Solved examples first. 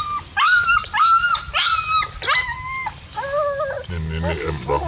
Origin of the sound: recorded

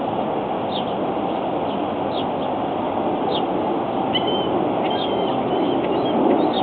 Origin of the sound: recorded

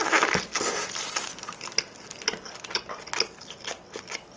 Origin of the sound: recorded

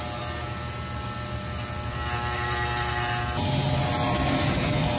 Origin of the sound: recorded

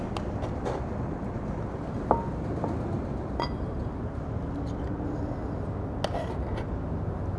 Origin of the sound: recorded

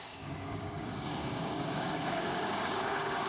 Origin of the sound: remade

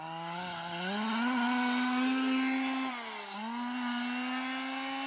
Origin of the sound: recorded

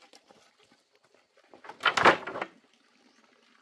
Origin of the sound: recorded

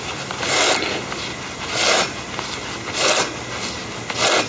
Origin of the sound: recorded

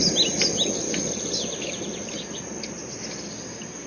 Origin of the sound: recorded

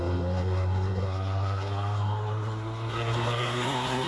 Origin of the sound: remade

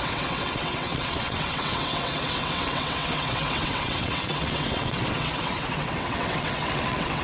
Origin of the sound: remade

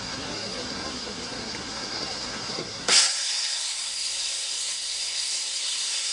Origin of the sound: remade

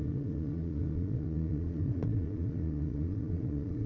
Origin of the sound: remade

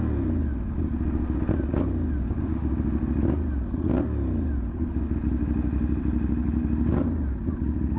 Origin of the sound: recorded